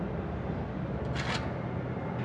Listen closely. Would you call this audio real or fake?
real